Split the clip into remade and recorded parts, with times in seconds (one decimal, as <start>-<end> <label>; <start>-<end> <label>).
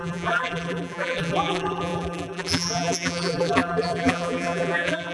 0.0-5.1 remade